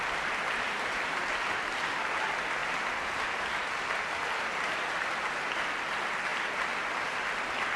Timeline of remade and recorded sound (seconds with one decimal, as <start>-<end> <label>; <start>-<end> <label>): 0.0-7.8 recorded